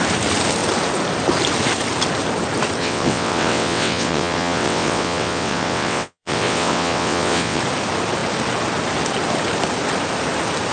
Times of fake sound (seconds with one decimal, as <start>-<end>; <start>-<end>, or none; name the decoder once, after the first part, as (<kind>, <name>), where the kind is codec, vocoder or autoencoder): 2.8-7.6 (vocoder, WaveNeXt)